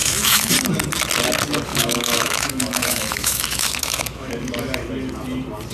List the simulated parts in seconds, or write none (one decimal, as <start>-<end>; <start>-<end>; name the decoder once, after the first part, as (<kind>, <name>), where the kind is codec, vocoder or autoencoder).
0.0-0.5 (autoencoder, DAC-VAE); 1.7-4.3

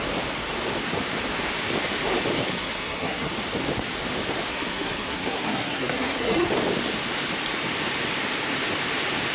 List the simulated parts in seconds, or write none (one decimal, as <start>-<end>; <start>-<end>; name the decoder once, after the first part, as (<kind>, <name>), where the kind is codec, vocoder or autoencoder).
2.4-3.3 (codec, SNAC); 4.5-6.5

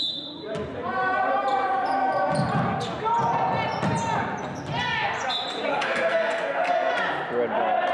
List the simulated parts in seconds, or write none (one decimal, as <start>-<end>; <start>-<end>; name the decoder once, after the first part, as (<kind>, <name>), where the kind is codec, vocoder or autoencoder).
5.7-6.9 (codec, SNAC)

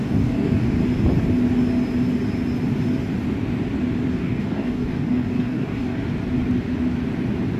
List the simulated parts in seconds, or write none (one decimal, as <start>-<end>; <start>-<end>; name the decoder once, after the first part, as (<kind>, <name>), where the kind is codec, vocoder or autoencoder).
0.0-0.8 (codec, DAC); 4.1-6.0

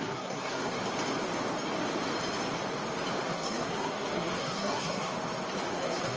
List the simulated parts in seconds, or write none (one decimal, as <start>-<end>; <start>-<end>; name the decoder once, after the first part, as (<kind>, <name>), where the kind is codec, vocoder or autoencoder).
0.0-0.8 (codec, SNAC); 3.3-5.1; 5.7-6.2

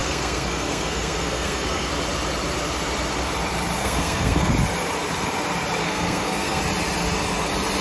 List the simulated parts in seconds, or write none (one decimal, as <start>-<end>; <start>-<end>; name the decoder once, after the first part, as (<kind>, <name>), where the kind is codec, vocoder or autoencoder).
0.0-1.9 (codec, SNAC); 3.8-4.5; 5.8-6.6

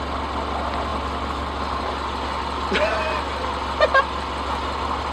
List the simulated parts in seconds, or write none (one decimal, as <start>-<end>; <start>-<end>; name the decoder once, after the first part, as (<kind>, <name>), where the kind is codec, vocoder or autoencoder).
none